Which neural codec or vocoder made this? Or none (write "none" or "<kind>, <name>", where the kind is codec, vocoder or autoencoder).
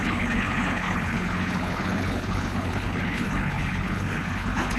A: codec, HILCodec